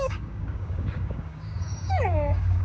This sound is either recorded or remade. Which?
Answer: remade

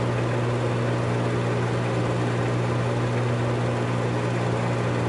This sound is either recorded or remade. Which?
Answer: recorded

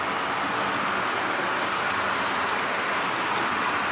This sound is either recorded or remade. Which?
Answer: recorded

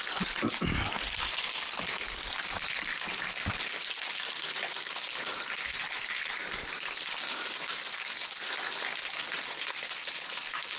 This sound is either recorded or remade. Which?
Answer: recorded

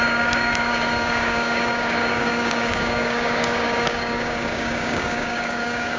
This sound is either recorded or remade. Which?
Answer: remade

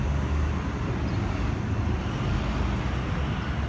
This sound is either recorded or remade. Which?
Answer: recorded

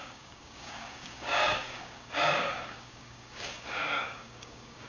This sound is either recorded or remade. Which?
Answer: remade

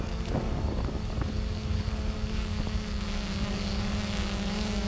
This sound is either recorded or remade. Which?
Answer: remade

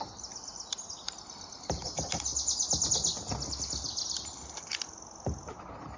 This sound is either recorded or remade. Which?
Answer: recorded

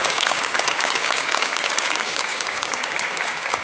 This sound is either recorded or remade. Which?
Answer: remade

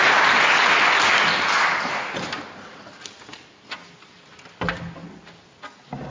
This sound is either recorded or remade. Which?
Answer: recorded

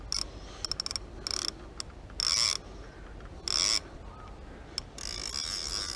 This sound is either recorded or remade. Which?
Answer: recorded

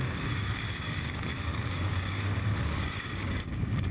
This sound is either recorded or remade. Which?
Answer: remade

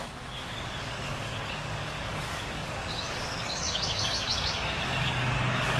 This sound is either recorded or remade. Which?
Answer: remade